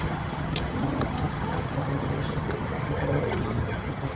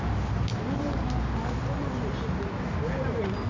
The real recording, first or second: second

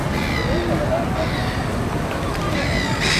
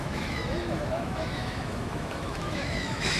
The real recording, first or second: first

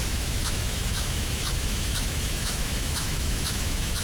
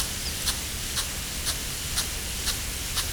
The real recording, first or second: second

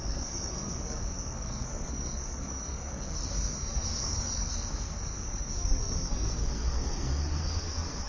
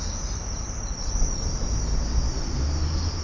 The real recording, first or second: second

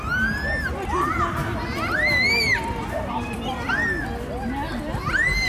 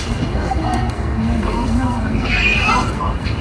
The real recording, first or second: first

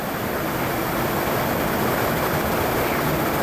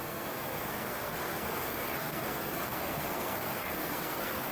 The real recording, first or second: first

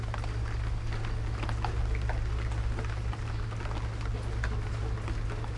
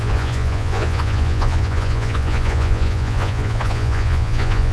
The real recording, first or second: first